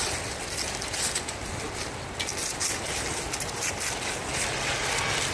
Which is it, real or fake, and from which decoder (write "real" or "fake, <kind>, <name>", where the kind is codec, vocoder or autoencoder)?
real